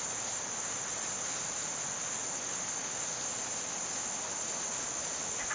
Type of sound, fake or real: real